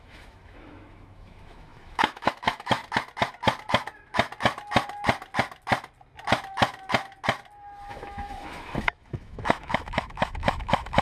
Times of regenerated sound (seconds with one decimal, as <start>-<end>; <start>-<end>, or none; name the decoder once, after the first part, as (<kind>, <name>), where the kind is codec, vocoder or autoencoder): 0.0-2.8 (autoencoder, DAC-VAE); 7.9-11.0